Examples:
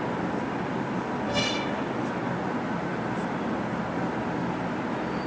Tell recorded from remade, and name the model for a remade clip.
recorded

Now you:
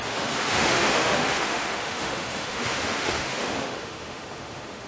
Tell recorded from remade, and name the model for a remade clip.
remade, autoencoder, DAC-VAE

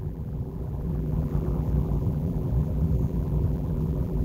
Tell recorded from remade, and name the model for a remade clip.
remade, vocoder, BigVGAN v2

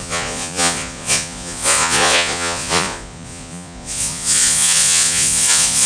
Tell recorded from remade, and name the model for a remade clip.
remade, vocoder, Vocos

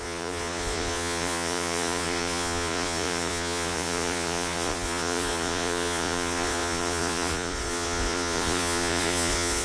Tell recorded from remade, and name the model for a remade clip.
remade, vocoder, Vocos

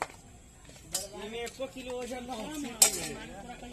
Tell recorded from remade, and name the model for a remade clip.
recorded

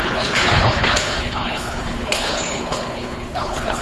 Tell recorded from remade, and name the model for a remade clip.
remade, codec, HILCodec